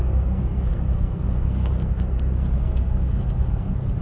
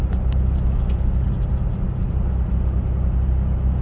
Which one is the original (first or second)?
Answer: second